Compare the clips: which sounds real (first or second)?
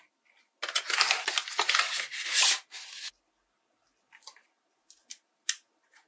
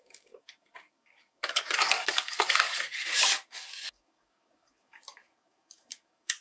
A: first